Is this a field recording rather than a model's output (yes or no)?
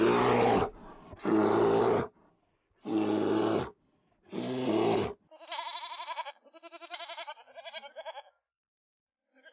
yes